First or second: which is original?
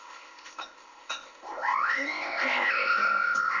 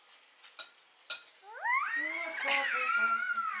second